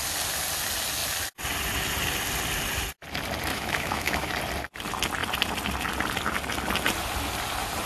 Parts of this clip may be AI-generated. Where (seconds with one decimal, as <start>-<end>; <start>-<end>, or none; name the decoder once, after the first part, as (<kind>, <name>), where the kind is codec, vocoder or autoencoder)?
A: 3.5-4.3 (autoencoder, DAC-VAE)